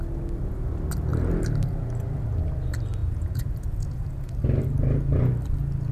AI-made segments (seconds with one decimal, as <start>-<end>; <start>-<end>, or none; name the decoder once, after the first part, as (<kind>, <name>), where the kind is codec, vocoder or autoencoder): 3.0-4.3 (vocoder, Vocos)